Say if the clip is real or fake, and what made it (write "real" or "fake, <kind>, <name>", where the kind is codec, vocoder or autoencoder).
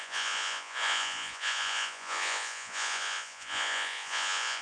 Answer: fake, vocoder, Vocos